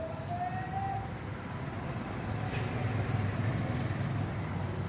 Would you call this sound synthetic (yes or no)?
no